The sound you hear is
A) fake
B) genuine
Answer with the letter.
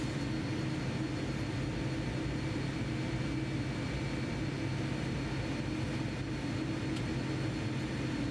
B